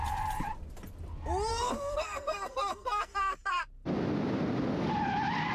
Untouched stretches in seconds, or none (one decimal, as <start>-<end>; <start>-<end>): 0.0-1.5; 3.6-5.5